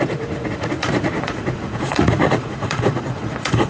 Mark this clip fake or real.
fake